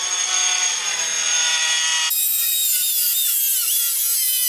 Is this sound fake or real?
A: real